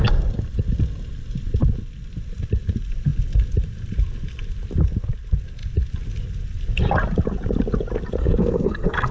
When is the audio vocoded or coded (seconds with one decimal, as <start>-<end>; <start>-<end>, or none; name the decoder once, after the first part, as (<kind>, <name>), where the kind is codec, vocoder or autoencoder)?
8.2-9.1 (codec, SNAC)